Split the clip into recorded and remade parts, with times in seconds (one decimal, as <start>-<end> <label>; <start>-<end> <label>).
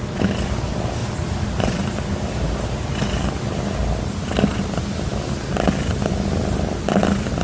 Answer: 0.0-1.0 recorded; 1.0-3.1 remade; 3.1-7.4 recorded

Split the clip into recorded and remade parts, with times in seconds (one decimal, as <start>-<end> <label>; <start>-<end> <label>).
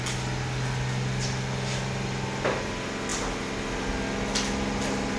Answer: 0.0-5.2 recorded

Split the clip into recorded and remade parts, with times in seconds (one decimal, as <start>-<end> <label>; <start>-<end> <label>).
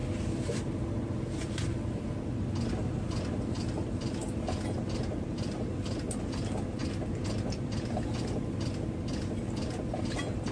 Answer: 0.0-10.5 recorded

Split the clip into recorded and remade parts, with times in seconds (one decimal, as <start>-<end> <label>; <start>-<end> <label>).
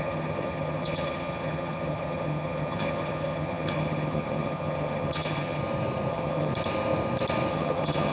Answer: 0.0-5.6 remade; 5.6-6.1 recorded; 6.1-6.5 remade; 6.5-7.5 recorded; 7.5-8.1 remade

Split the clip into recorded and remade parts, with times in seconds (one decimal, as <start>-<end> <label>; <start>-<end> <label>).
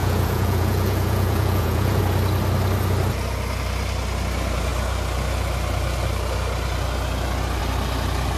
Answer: 0.0-2.0 remade; 2.0-8.4 recorded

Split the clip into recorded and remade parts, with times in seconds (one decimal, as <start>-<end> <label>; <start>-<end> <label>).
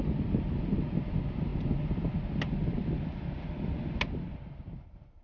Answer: 0.0-5.2 recorded